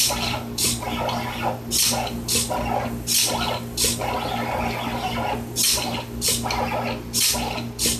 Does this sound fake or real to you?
real